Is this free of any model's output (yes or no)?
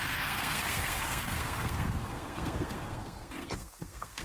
no